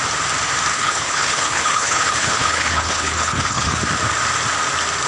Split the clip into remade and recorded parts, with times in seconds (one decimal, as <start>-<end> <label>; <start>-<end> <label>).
0.0-0.7 recorded; 0.7-3.8 remade; 3.8-5.1 recorded